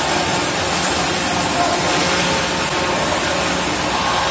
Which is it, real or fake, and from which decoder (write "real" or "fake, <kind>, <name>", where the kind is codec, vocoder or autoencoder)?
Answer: real